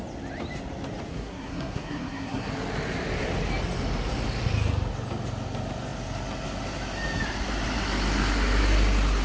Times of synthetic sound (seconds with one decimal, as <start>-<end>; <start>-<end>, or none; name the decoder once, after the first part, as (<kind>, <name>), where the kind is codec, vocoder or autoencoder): 1.1-2.5 (codec, SNAC)